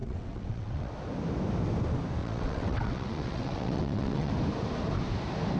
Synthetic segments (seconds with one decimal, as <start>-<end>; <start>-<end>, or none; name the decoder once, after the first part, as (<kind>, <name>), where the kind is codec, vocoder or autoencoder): 0.0-0.9 (vocoder, WaveNeXt); 2.2-4.3